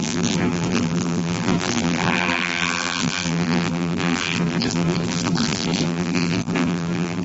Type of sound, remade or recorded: remade